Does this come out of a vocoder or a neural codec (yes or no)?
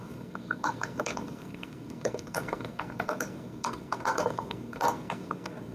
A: yes